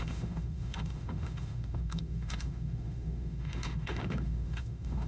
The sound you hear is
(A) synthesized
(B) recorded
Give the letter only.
A